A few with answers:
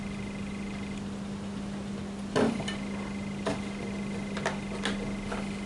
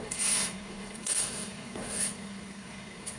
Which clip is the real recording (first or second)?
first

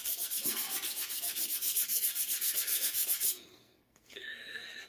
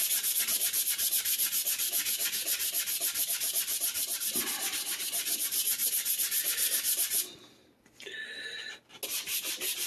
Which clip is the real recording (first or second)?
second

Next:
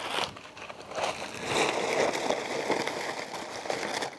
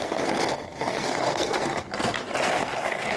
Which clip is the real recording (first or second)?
first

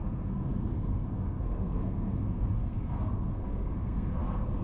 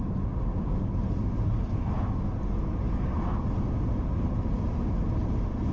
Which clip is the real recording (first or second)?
second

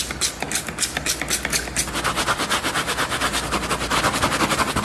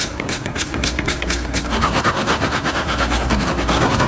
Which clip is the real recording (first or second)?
first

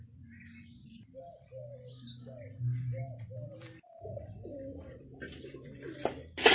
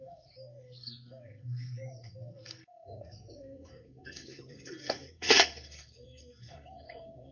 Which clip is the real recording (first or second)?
first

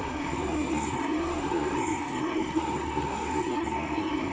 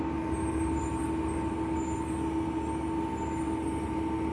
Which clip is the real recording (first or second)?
second